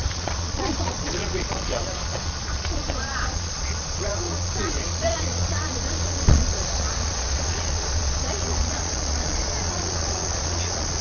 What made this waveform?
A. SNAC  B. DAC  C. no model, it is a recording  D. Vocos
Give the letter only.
D